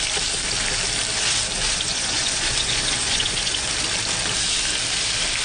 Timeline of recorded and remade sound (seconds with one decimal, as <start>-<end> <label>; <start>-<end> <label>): 0.0-1.6 recorded; 1.6-3.7 remade; 3.7-5.4 recorded